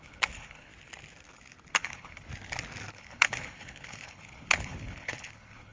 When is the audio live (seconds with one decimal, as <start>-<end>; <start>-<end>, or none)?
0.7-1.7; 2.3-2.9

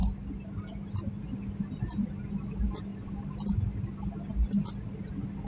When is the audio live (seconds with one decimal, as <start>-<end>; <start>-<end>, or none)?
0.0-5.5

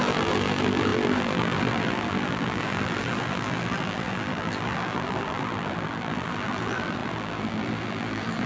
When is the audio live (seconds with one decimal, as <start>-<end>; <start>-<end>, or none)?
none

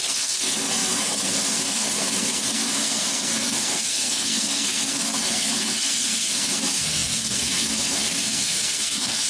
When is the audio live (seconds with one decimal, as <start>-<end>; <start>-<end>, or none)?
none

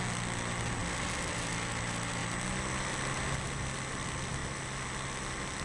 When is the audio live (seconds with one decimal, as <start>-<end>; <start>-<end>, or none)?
0.0-5.6

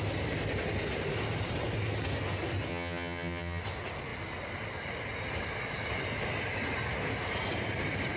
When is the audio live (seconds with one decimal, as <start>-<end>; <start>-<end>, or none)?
0.0-2.7; 3.6-8.2

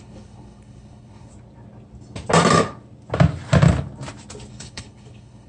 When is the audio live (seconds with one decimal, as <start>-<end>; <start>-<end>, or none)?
1.3-4.5

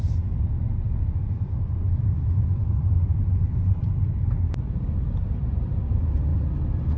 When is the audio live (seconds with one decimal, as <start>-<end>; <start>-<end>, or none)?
6.3-7.0